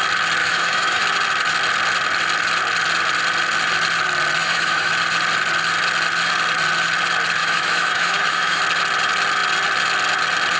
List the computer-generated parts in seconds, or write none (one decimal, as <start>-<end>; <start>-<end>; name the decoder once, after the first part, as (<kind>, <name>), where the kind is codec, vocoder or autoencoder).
0.4-1.0 (autoencoder, DAC-VAE); 4.4-4.9; 7.4-8.6